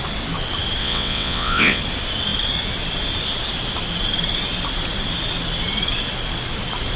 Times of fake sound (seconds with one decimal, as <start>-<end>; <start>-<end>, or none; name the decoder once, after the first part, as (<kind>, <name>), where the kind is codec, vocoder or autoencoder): 0.8-1.8 (vocoder, WaveNeXt)